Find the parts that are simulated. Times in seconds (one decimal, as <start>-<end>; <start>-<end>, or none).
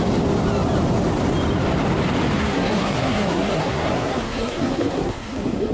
2.4-5.7